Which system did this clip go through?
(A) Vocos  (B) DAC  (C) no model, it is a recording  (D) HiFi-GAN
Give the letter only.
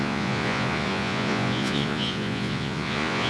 A